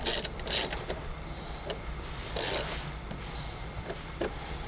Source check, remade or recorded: recorded